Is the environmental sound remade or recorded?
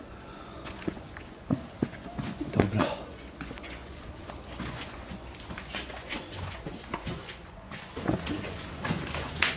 remade